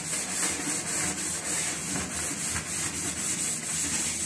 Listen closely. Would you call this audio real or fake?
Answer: real